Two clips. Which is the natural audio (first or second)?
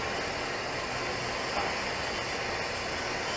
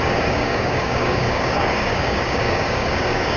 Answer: first